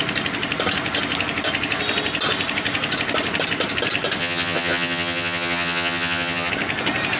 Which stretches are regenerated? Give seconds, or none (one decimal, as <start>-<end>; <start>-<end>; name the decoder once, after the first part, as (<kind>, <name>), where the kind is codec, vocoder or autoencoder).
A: 4.2-6.5 (vocoder, HiFi-GAN)